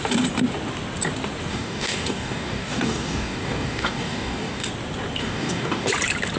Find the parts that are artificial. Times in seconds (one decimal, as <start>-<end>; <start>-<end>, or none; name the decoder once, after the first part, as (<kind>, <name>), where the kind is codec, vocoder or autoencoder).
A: 1.5-4.7 (codec, DAC); 5.2-5.9